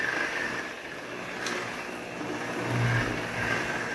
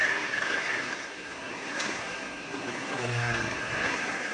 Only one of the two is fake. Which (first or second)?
second